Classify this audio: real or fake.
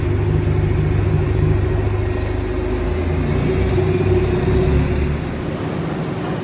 real